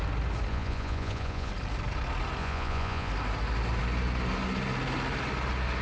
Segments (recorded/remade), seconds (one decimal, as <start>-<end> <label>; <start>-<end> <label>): 0.0-0.5 recorded; 0.5-1.5 remade; 1.5-2.4 recorded; 2.4-3.1 remade; 3.1-5.8 recorded